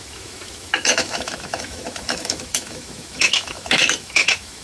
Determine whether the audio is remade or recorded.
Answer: remade